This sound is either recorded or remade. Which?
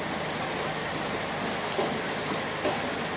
recorded